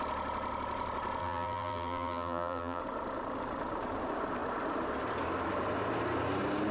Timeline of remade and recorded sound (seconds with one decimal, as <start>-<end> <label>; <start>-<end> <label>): 0.0-1.2 recorded; 1.2-2.8 remade; 2.8-6.7 recorded